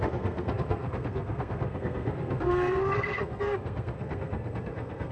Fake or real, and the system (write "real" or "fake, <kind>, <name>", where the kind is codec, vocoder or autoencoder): fake, codec, SNAC